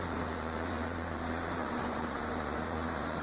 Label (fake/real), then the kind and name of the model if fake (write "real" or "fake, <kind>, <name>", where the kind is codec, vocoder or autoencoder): fake, vocoder, Vocos